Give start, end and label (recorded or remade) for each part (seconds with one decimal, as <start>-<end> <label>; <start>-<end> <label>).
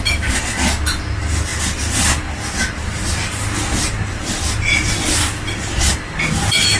0.0-6.8 recorded